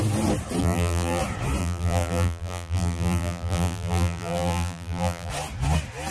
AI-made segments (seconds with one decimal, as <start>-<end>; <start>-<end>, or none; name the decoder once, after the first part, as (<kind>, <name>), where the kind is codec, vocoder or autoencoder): 0.6-1.2 (vocoder, BigVGAN v2); 1.6-5.3